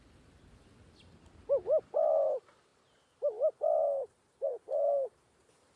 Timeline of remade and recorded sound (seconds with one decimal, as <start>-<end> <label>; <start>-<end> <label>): 0.0-2.7 recorded; 2.7-3.5 remade; 3.5-4.5 recorded; 4.5-5.8 remade